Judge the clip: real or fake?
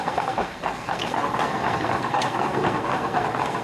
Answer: fake